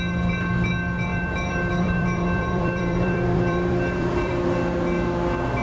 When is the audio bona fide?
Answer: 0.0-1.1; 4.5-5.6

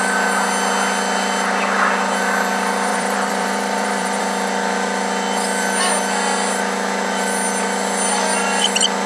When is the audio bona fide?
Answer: 0.0-2.9; 4.2-9.1

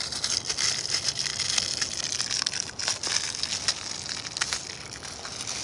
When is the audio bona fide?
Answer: 1.3-2.3; 2.8-5.6

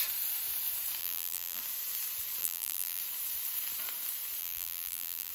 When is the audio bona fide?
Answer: 0.0-1.0; 1.6-2.4; 3.0-4.4

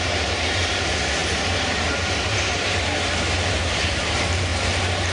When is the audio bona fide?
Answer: 4.5-5.1

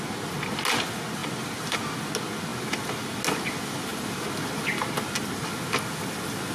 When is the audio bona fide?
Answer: 0.0-1.2; 2.1-6.5

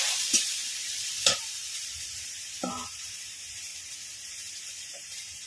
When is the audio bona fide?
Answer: 0.6-1.2; 3.7-4.3